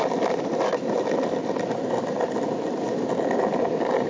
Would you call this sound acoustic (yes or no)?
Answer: yes